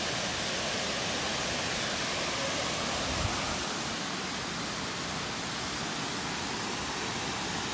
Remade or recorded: recorded